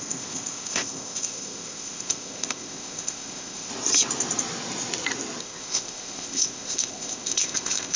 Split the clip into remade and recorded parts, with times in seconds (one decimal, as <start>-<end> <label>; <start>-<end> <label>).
0.0-3.7 remade; 3.7-5.4 recorded; 5.4-8.0 remade